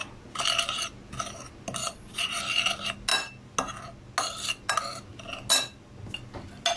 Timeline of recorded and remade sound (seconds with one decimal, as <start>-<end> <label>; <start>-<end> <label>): 0.0-1.8 recorded; 1.8-2.4 remade; 2.4-6.8 recorded